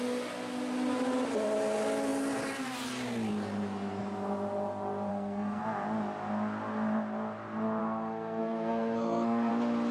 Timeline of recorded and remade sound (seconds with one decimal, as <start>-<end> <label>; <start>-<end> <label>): 0.0-5.1 recorded; 5.1-5.6 remade; 5.6-7.8 recorded; 7.8-9.5 remade; 9.5-9.9 recorded